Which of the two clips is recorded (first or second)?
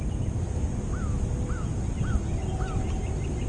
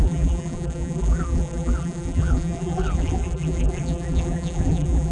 first